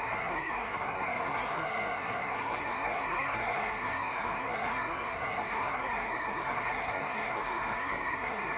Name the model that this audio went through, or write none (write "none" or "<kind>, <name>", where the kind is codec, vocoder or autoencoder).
codec, SNAC